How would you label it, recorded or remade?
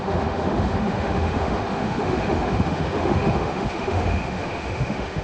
remade